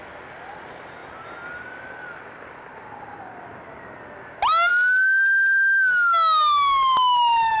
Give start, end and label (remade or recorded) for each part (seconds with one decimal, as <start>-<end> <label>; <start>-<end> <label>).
0.0-7.6 recorded